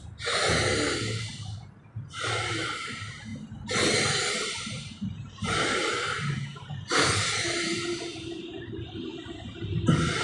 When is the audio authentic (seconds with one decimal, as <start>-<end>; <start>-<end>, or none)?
3.3-4.3; 9.1-9.7